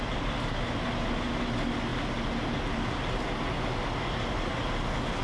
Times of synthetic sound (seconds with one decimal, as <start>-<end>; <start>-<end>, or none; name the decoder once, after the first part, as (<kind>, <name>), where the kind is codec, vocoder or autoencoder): none